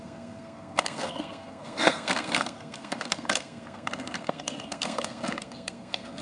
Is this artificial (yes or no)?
yes